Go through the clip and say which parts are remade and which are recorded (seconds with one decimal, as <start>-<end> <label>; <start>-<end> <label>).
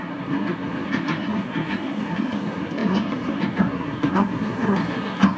0.0-5.4 remade